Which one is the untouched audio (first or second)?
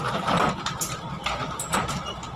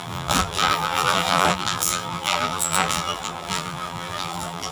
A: first